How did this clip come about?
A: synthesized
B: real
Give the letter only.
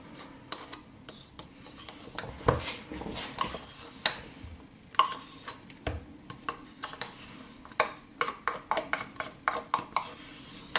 B